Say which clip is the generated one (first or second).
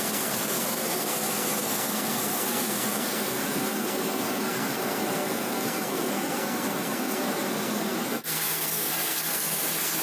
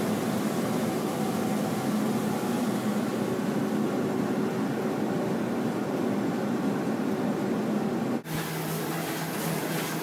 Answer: first